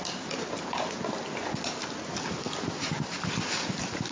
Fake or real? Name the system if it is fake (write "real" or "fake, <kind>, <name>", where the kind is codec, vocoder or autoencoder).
real